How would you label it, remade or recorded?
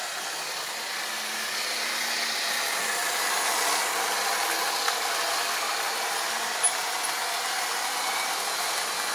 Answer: recorded